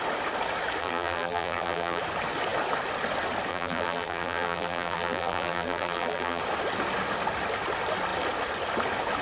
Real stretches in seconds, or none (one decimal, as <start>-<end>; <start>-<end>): 0.0-0.8; 2.0-3.5; 6.4-9.2